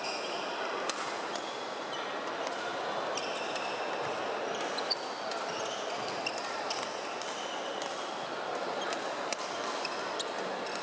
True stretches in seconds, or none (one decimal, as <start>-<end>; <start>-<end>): 0.0-10.8